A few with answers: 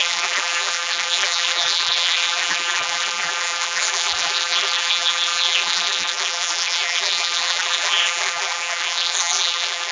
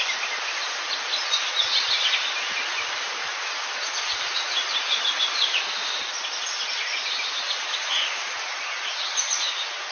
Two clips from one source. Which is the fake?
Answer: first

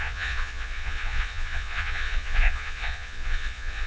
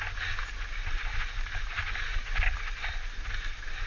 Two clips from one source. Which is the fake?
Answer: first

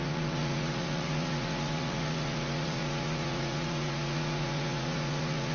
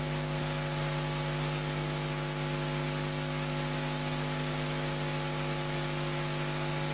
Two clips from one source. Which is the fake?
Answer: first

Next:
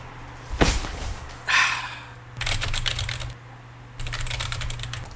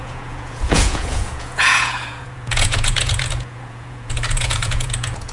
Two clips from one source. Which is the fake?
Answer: second